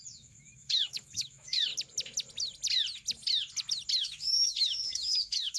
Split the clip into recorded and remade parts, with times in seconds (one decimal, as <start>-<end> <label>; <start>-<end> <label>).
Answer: 0.0-1.7 remade; 1.7-4.0 recorded; 4.0-5.6 remade